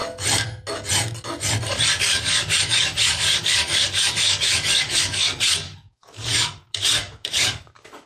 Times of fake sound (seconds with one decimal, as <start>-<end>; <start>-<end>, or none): 2.0-8.1